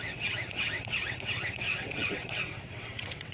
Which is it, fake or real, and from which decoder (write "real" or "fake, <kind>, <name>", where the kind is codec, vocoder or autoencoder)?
fake, vocoder, WaveNeXt